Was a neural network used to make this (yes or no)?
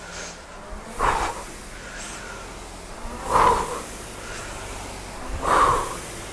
no